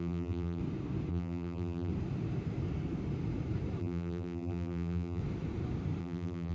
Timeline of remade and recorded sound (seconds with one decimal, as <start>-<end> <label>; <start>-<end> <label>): 0.0-0.6 remade; 0.6-1.1 recorded; 1.1-1.9 remade; 1.9-3.8 recorded; 3.8-5.2 remade; 5.2-6.0 recorded; 6.0-6.5 remade